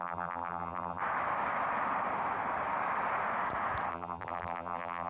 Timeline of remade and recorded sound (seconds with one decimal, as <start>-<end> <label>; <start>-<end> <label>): 0.0-1.0 remade; 1.0-3.9 recorded; 3.9-5.1 remade